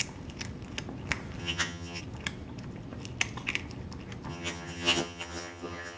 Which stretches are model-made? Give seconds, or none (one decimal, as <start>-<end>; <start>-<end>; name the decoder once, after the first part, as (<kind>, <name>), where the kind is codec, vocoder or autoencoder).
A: 1.4-2.0 (vocoder, HiFi-GAN); 4.3-6.0